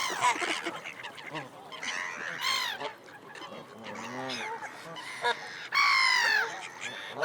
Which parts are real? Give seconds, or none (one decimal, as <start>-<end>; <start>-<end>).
0.0-1.9; 2.9-7.2